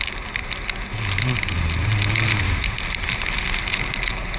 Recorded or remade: recorded